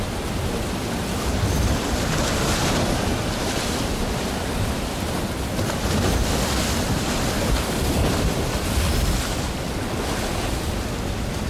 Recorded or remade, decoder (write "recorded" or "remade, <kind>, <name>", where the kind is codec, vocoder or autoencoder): recorded